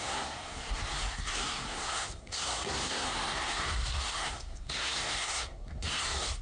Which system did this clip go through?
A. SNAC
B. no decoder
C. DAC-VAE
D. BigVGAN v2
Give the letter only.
A